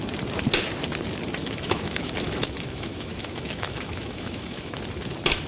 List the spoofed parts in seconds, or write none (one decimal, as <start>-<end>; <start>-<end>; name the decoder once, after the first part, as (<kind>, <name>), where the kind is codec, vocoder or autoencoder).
1.4-4.7 (autoencoder, DAC-VAE)